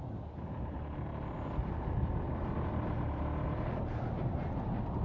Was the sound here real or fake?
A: real